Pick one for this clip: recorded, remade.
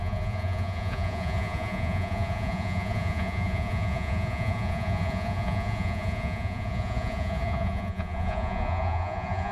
remade